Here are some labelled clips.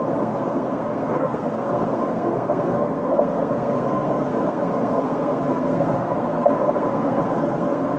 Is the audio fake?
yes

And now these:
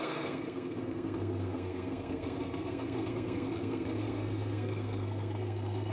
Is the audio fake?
yes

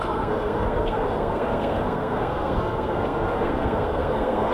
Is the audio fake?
yes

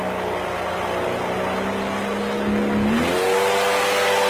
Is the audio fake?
no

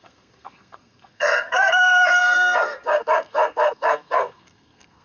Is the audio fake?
yes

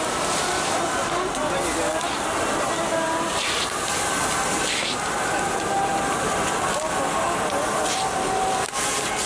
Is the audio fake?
no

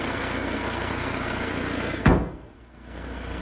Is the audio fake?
yes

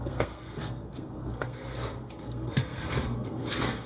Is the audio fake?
yes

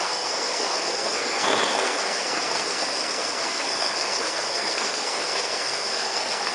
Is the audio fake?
yes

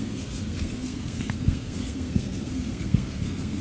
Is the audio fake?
yes